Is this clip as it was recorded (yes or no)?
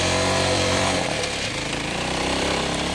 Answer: no